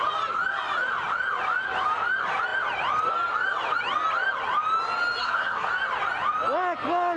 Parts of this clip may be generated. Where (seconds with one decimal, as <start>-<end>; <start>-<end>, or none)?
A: 5.2-5.7